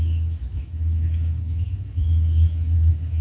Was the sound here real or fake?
fake